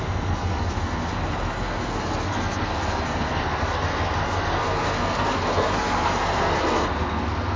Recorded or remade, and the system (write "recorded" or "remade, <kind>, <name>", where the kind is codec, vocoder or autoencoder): remade, codec, SNAC